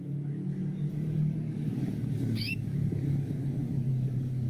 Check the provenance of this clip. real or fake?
fake